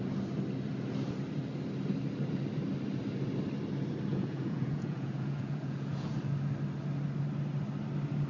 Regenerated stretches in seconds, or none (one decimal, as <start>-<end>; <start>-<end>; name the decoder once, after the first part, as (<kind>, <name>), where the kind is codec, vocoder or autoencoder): 4.1-6.2 (vocoder, Vocos)